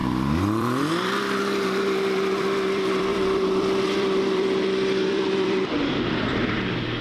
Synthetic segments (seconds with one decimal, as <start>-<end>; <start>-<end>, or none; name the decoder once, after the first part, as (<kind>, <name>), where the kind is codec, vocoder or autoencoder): 0.0-7.0 (vocoder, BigVGAN v2)